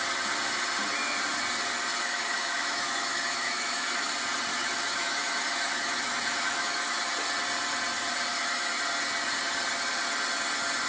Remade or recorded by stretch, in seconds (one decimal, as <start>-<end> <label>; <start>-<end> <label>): 0.0-1.9 recorded; 1.9-4.1 remade; 4.1-4.5 recorded; 4.5-7.0 remade; 7.0-8.3 recorded; 8.3-8.8 remade; 8.8-10.9 recorded

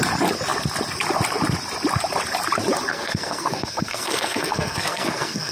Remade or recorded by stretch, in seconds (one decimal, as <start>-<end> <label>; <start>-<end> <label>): 0.0-2.9 recorded; 2.9-5.5 remade

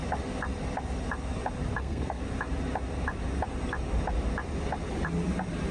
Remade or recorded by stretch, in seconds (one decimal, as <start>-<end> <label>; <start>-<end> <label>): 0.0-1.8 recorded; 1.8-2.2 remade; 2.2-5.7 recorded

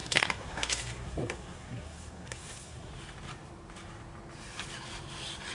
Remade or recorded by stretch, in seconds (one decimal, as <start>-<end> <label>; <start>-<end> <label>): 0.0-2.9 remade; 2.9-5.5 recorded

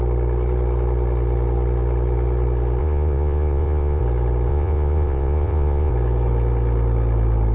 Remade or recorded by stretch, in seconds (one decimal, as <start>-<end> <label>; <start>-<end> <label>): 0.0-2.8 recorded; 2.8-4.0 remade; 4.0-4.5 recorded; 4.5-5.9 remade; 5.9-7.5 recorded

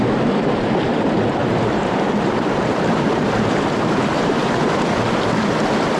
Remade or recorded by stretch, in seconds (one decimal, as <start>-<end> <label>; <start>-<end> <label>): 0.0-1.4 recorded; 1.4-5.0 remade; 5.0-6.0 recorded